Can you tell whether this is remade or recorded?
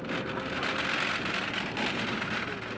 recorded